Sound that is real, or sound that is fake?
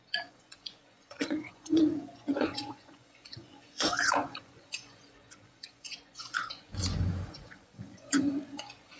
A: fake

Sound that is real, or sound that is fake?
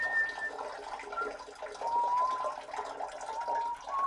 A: real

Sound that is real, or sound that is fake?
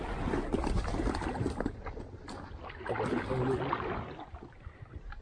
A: real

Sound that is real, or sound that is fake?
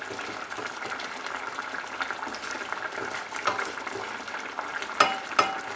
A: real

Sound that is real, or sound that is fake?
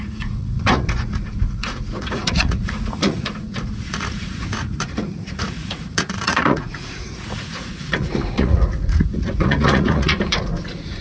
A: fake